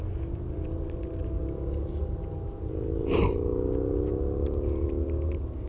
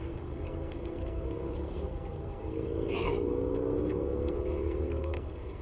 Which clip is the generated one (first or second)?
second